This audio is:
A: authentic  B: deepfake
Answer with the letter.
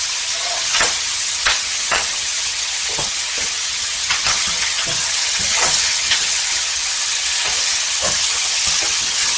B